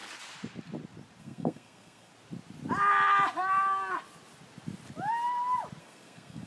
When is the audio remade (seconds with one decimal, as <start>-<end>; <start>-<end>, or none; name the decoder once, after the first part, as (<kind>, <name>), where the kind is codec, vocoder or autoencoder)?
1.2-2.1 (codec, SNAC); 5.8-6.5